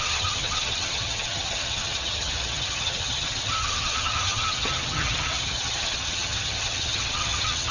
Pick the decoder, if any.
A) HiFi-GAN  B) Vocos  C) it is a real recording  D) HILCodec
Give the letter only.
A